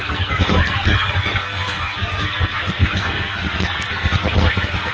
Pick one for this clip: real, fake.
fake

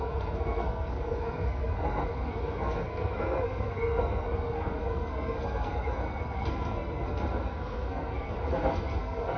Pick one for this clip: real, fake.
fake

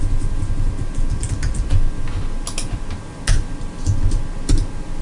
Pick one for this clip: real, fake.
real